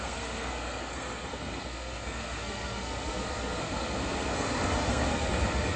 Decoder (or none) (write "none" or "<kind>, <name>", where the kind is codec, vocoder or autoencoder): codec, SNAC